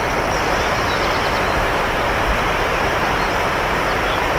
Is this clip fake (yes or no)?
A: yes